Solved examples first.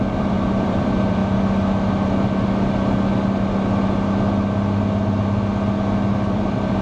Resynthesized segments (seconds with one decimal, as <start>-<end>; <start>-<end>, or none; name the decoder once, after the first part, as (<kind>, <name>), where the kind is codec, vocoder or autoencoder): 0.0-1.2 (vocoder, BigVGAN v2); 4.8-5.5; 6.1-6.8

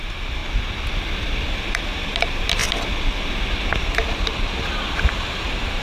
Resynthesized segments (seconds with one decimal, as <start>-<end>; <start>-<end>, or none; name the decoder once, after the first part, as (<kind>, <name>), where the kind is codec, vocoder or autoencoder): 0.0-0.4 (vocoder, BigVGAN v2); 1.5-2.6; 4.9-5.8

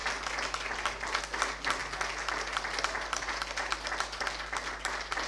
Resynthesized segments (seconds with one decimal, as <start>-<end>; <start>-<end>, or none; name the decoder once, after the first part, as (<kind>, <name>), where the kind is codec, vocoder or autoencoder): none

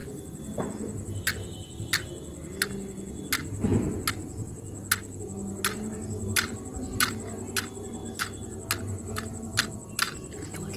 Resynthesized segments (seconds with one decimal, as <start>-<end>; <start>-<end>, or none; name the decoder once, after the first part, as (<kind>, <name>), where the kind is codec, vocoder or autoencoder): none

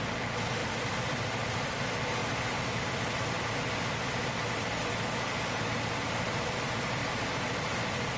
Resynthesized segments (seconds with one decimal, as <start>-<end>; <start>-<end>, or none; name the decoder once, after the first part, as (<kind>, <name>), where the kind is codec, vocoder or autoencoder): 0.6-1.7 (vocoder, BigVGAN v2)

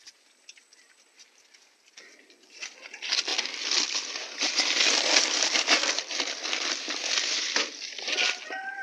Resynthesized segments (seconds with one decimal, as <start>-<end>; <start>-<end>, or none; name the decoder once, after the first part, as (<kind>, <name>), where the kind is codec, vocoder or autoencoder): none

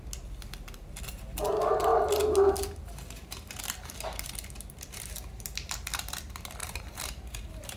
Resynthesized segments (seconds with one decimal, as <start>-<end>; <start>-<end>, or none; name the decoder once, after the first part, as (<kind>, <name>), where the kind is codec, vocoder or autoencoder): 6.6-7.8 (vocoder, BigVGAN v2)